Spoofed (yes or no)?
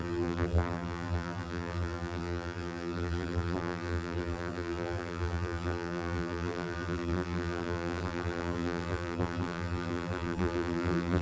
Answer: yes